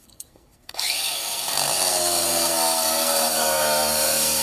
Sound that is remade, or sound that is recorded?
remade